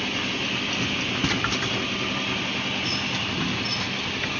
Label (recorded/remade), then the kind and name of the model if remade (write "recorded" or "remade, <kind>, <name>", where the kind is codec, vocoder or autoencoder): recorded